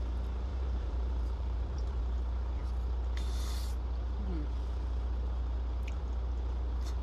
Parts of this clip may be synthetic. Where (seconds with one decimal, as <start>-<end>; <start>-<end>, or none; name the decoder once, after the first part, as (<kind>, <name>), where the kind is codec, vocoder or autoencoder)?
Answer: 0.5-2.0 (vocoder, BigVGAN v2)